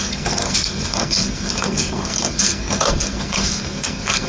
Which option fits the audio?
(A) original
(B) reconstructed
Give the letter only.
B